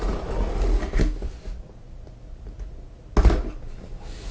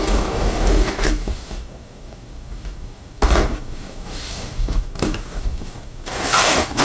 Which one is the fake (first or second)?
second